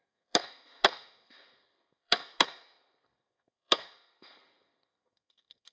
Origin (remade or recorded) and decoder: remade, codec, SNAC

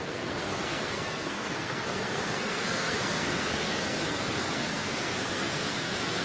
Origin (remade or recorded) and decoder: remade, codec, SNAC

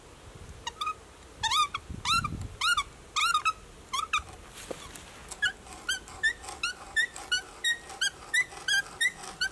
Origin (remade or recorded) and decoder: recorded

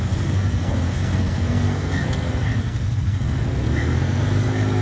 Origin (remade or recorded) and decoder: remade, codec, SNAC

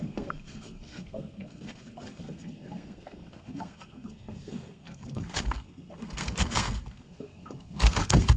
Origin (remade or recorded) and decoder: remade, codec, SNAC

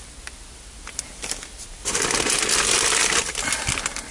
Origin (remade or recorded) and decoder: recorded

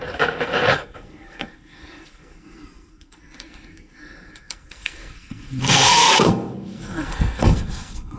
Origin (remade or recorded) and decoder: remade, codec, SNAC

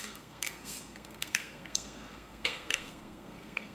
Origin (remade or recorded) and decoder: remade, codec, SNAC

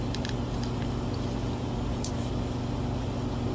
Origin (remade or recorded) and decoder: recorded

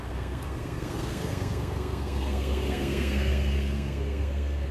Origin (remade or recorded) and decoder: remade, codec, SNAC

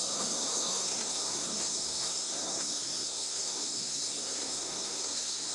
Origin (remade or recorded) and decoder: remade, codec, SNAC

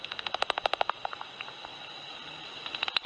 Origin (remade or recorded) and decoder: recorded